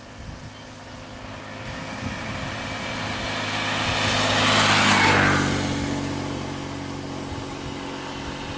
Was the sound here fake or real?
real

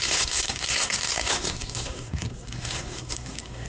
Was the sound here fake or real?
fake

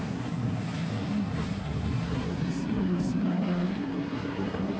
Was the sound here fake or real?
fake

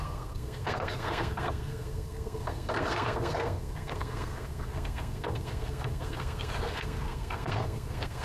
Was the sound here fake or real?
fake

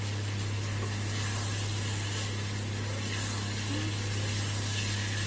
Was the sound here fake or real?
real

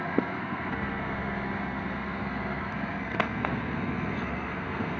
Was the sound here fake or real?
fake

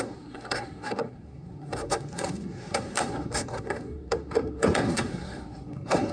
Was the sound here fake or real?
fake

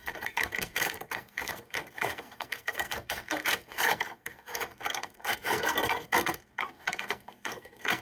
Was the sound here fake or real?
fake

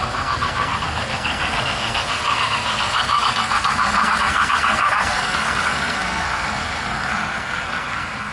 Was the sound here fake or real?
fake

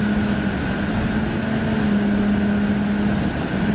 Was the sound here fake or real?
real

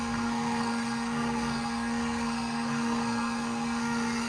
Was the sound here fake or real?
fake